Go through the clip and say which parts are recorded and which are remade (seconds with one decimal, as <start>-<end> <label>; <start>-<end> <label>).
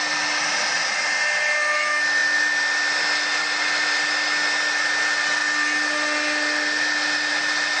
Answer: 0.0-7.8 recorded